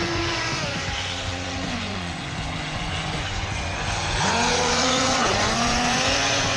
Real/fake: fake